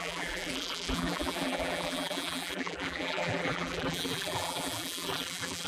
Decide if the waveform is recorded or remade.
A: remade